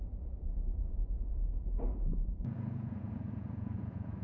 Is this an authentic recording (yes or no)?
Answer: no